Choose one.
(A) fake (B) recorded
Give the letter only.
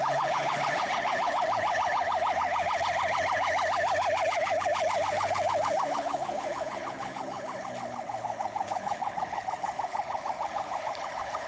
A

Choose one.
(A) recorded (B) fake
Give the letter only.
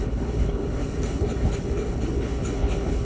B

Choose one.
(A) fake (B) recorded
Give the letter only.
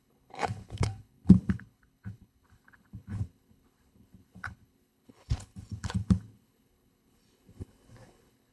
A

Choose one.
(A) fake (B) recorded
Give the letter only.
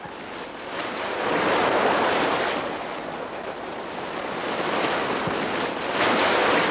B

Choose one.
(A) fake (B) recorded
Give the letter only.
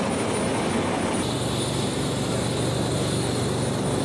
B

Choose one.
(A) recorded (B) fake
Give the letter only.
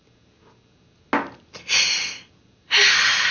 A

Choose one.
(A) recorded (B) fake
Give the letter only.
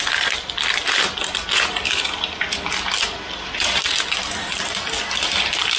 A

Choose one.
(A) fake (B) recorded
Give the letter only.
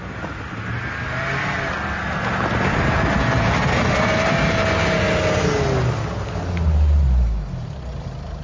B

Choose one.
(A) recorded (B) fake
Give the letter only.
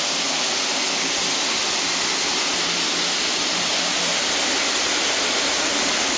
A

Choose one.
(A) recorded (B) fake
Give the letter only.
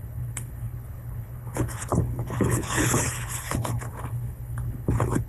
B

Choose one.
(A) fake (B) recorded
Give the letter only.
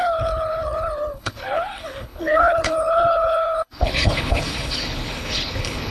A